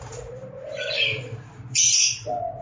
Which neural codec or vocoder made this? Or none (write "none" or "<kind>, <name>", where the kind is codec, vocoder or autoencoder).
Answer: none